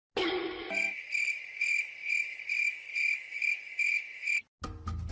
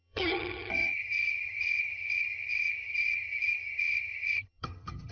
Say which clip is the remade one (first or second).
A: second